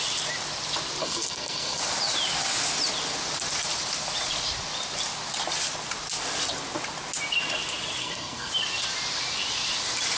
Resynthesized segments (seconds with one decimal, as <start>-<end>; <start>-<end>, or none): 1.0-1.8; 8.0-8.5